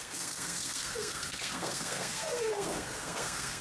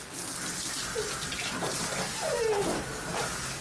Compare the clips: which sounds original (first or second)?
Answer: second